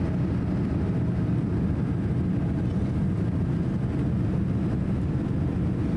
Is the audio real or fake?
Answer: real